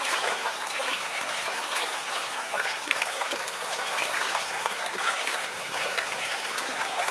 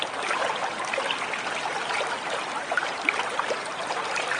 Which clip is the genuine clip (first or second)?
second